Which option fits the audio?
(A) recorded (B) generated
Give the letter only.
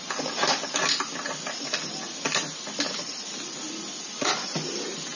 A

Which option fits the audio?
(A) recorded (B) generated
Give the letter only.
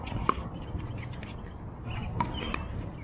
A